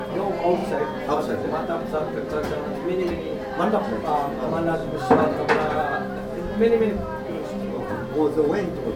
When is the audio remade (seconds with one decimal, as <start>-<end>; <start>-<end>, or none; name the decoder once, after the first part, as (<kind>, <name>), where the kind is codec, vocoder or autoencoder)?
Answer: none